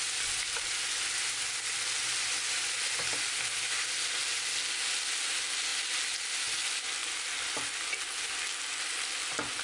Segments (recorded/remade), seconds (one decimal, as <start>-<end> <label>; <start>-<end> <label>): 0.0-9.6 recorded

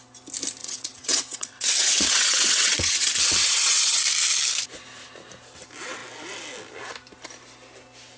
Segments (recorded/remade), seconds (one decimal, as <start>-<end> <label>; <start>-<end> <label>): 0.0-0.6 recorded; 0.6-4.0 remade; 4.0-8.2 recorded

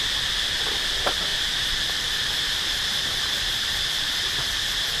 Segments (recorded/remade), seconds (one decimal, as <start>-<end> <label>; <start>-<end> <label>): 0.0-1.3 recorded; 1.3-4.3 remade; 4.3-5.0 recorded